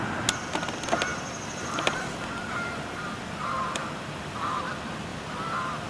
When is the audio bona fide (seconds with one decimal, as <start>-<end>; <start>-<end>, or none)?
0.0-1.1; 4.6-5.1